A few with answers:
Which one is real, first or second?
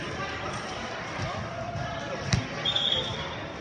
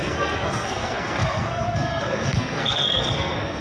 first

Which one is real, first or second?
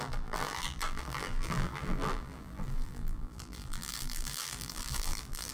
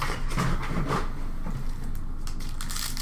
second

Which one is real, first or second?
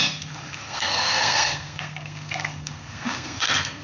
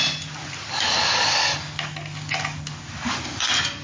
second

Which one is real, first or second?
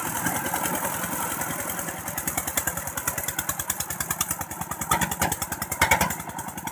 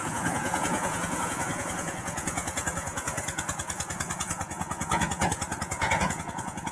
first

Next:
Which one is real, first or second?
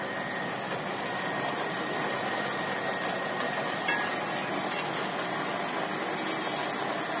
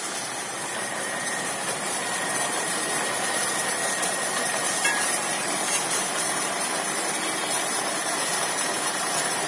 first